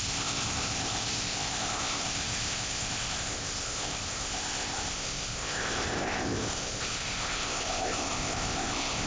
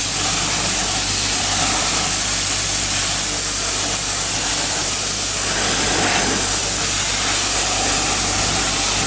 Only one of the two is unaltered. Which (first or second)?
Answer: second